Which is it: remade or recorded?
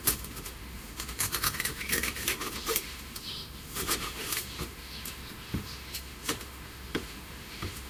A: remade